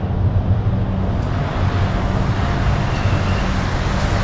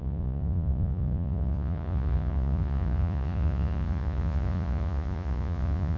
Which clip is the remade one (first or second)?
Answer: second